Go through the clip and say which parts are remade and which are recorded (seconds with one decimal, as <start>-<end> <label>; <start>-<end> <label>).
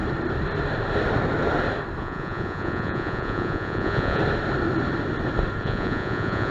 0.0-2.0 recorded; 2.0-4.2 remade; 4.2-5.6 recorded; 5.6-6.5 remade